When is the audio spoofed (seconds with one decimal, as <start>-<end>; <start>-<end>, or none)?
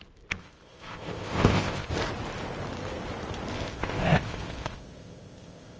0.4-1.9; 3.5-5.8